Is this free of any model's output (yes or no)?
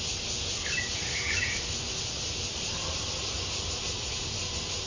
yes